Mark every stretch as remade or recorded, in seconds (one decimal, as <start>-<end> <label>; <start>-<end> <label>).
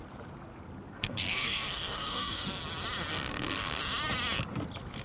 0.0-0.9 recorded; 0.9-2.6 remade; 2.6-3.1 recorded; 3.1-3.8 remade; 3.8-5.0 recorded